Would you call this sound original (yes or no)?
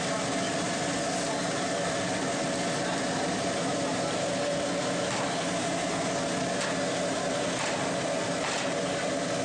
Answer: yes